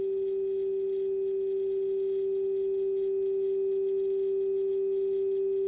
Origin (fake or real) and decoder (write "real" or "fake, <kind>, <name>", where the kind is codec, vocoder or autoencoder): real